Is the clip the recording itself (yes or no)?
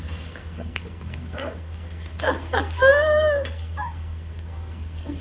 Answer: no